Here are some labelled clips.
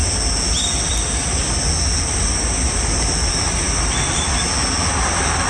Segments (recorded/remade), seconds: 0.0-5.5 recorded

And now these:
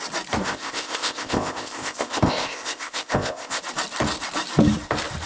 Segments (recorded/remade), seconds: 0.0-0.4 recorded; 0.4-3.6 remade; 3.6-5.3 recorded

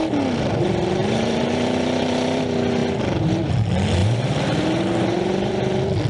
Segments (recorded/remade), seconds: 0.0-1.0 recorded; 1.0-2.4 remade; 2.4-4.0 recorded; 4.0-5.6 remade; 5.6-6.1 recorded

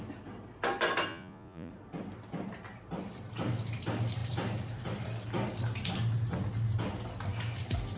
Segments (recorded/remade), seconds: 0.0-1.1 recorded; 1.1-1.7 remade; 1.7-8.0 recorded

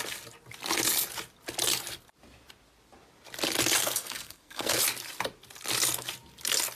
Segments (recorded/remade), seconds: 0.0-3.8 recorded; 3.8-4.8 remade; 4.8-6.8 recorded

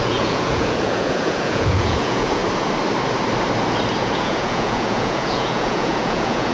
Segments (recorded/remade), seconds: 0.0-2.4 remade; 2.4-4.0 recorded; 4.0-6.5 remade

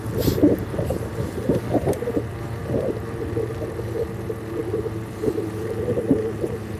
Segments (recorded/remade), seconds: 0.0-6.8 recorded

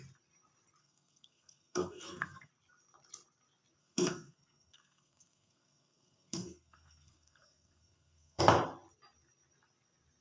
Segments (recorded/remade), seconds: 0.0-0.8 recorded; 0.8-2.5 remade; 2.5-3.8 recorded; 3.8-8.4 remade; 8.4-10.2 recorded